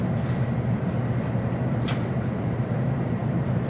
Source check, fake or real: real